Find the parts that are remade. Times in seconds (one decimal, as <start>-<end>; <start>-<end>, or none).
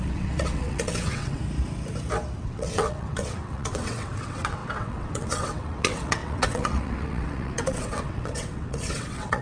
0.0-1.4; 2.4-9.4